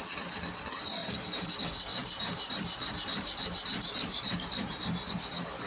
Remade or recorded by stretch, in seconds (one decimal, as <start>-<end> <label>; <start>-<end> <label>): 0.0-1.0 recorded; 1.0-1.5 remade; 1.5-1.9 recorded; 1.9-5.1 remade; 5.1-5.7 recorded